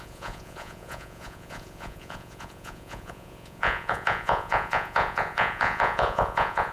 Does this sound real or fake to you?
fake